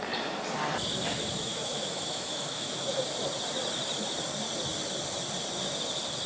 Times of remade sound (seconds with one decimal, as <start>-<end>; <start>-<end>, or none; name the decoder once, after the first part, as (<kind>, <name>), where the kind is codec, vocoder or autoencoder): 1.5-3.0 (autoencoder, DAC-VAE)